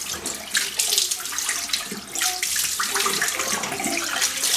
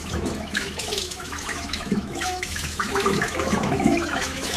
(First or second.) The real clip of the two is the first